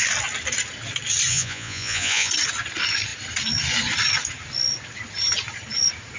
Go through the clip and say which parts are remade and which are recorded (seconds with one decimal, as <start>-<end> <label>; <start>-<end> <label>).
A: 0.0-1.3 recorded; 1.3-2.3 remade; 2.3-6.2 recorded